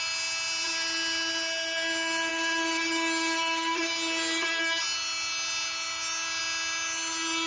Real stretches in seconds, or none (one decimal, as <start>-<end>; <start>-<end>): 0.0-7.5